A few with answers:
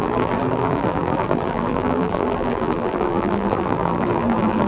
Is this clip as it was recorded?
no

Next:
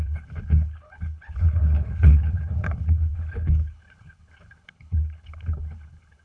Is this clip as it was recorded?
no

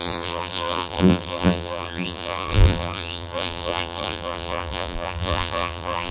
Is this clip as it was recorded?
no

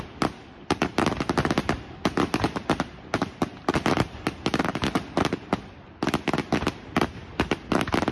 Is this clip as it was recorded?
yes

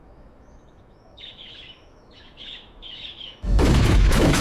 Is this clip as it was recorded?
no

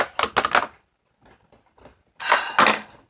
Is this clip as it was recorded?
yes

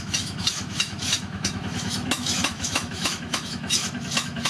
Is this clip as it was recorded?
no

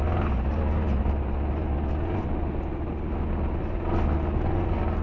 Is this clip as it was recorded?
yes